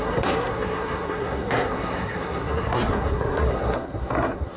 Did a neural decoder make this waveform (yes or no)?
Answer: yes